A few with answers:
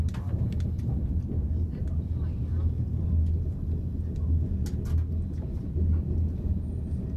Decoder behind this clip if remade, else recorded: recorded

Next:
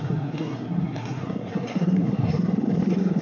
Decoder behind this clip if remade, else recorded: remade, codec, SNAC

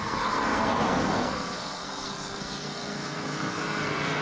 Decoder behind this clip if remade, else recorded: remade, codec, SNAC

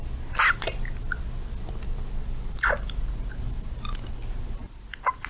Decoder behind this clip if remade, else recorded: recorded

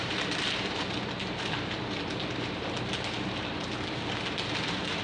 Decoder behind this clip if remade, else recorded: recorded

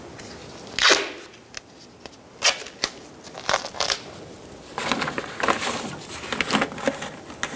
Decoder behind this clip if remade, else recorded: recorded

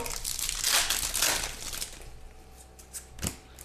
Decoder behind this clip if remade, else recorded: recorded